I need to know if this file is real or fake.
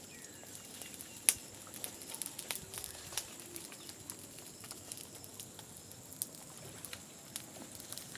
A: real